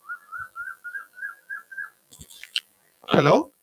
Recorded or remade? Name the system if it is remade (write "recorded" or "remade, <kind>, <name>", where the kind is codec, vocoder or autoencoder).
remade, vocoder, BigVGAN v2